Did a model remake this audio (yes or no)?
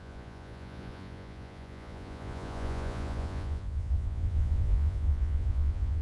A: yes